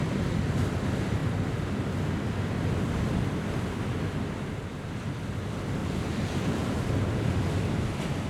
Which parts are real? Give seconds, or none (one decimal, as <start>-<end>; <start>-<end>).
0.0-5.8; 7.7-8.3